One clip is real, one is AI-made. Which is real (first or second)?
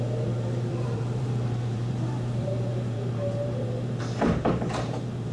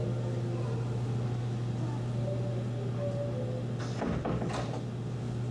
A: second